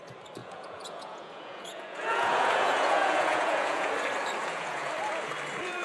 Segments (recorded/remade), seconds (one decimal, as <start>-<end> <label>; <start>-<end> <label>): 0.0-0.4 recorded; 0.4-3.9 remade; 3.9-4.4 recorded; 4.4-4.9 remade; 4.9-5.8 recorded